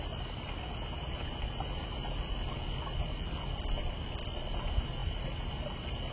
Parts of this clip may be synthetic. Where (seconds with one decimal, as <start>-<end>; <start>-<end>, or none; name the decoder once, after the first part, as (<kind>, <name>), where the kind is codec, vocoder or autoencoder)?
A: none